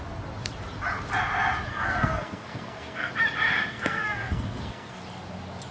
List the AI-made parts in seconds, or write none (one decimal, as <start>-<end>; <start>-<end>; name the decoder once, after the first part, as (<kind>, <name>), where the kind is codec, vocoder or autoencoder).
1.7-3.1 (codec, SNAC); 3.7-5.0